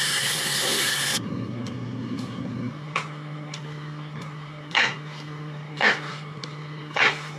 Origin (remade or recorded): remade